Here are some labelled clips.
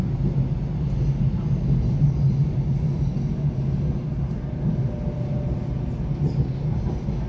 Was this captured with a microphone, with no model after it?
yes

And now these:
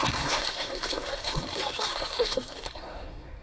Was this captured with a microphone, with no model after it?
no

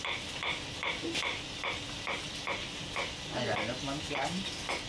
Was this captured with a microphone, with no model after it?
yes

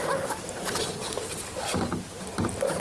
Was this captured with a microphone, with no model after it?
yes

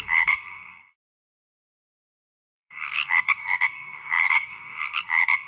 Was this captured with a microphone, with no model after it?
no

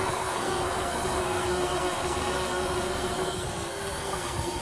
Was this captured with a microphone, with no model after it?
no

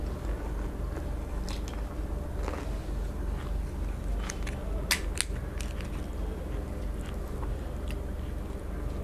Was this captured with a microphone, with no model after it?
yes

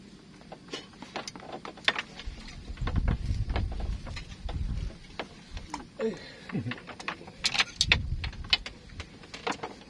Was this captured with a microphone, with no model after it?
yes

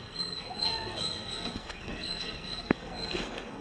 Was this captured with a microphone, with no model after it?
no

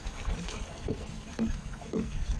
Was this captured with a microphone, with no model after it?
no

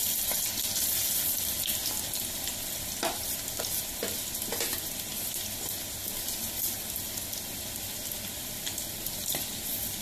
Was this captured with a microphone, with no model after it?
yes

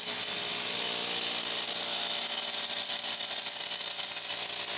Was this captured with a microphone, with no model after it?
yes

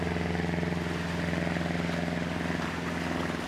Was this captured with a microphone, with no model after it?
yes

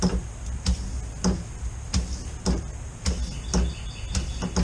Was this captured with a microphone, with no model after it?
yes